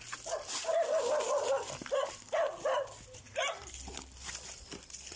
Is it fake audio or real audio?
fake